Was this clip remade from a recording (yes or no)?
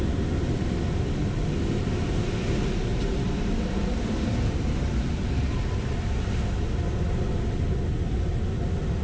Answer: no